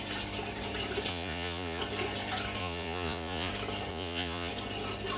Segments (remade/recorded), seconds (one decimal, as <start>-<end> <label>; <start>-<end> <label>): 0.0-1.1 recorded; 1.1-1.8 remade; 1.8-2.6 recorded; 2.6-3.5 remade; 3.5-3.9 recorded; 3.9-4.5 remade; 4.5-5.2 recorded